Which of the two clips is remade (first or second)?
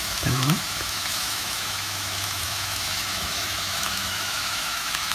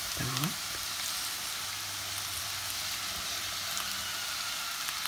first